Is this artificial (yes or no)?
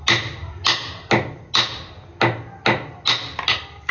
no